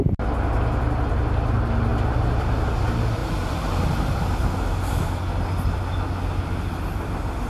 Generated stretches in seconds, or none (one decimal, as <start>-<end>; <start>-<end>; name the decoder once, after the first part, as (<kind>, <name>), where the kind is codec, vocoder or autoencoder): 3.2-4.1 (vocoder, BigVGAN v2)